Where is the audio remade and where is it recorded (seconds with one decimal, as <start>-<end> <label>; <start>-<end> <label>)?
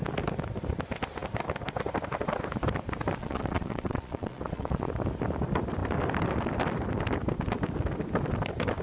0.0-3.2 recorded; 3.2-4.9 remade; 4.9-8.8 recorded